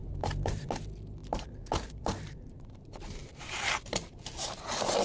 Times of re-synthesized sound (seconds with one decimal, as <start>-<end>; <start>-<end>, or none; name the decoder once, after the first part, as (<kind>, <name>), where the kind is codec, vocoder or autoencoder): 0.0-0.7 (vocoder, BigVGAN v2); 1.2-2.8; 3.2-4.4